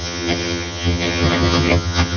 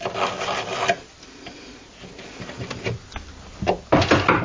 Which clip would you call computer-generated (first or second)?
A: first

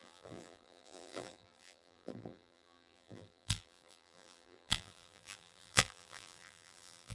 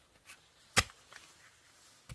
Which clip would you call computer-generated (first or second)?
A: first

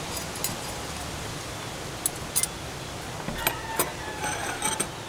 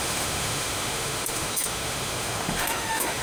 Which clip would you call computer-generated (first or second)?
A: second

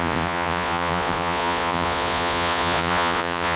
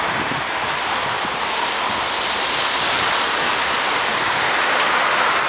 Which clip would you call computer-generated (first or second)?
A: first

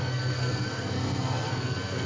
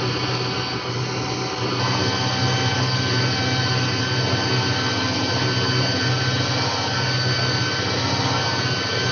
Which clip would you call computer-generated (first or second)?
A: first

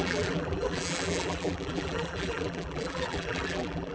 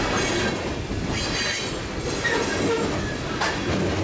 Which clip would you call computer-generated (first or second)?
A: first